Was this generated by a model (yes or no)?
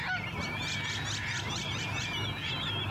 no